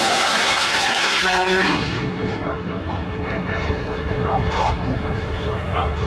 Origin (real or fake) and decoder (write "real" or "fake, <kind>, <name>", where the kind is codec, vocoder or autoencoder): fake, codec, SNAC